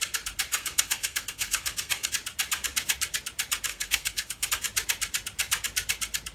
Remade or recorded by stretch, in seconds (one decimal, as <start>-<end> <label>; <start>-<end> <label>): 0.0-0.5 recorded; 0.5-2.1 remade; 2.1-3.7 recorded; 3.7-4.5 remade; 4.5-6.3 recorded